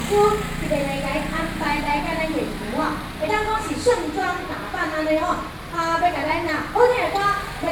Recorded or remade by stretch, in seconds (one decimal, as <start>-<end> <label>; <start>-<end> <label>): 0.0-1.1 recorded; 1.1-3.8 remade; 3.8-7.7 recorded